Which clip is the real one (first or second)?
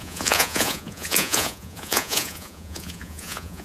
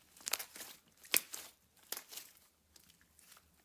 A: second